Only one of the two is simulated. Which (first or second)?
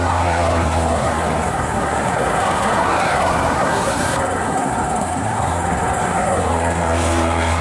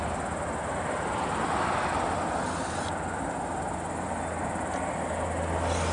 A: first